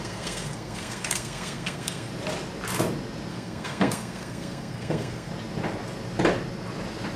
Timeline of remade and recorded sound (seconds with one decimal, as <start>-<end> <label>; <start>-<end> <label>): 0.0-2.1 remade; 2.1-3.3 recorded; 3.3-5.3 remade; 5.3-7.2 recorded